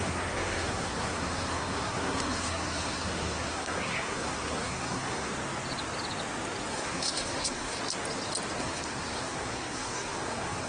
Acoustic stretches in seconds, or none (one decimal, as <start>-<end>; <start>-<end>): 5.3-6.7; 7.8-8.6